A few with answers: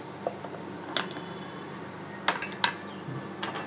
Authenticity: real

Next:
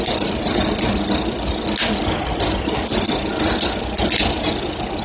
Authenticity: real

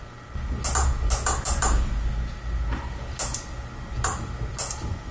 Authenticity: real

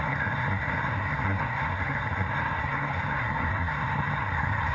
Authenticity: fake